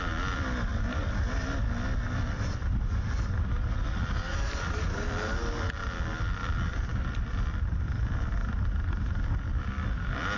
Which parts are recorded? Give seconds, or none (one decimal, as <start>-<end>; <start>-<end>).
0.0-10.4